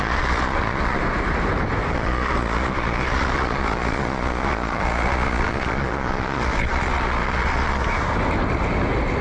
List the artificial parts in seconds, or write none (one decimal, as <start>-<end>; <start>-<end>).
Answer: 0.0-1.0; 1.9-7.8

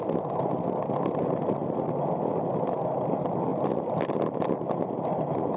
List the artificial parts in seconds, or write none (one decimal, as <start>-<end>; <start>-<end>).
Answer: none

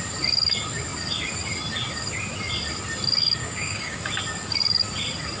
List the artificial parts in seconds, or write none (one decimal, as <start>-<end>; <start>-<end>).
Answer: 3.4-4.0

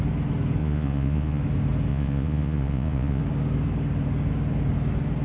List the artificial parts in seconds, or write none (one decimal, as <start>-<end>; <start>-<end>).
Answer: 0.6-1.4; 1.9-3.2

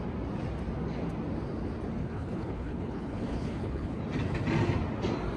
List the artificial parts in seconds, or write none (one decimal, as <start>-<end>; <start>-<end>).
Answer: 2.0-4.0